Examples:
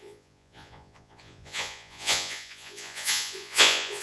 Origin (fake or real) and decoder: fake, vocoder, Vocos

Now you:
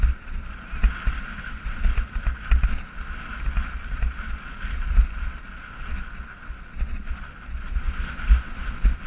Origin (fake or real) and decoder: real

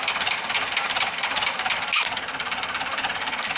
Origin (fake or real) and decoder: real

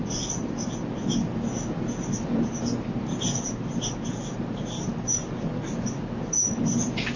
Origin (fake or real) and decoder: real